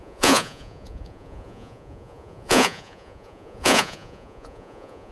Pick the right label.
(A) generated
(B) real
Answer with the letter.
A